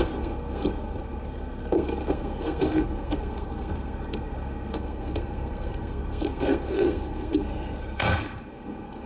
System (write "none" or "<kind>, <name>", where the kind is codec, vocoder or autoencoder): codec, SNAC